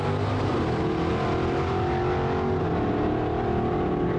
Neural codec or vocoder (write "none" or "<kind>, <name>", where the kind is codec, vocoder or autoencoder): none